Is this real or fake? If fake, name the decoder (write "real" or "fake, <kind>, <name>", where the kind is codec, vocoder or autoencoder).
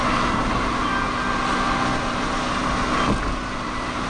real